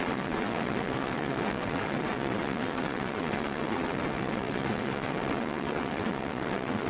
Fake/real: fake